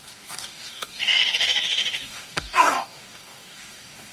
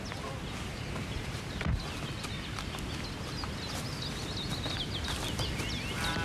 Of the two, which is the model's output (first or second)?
first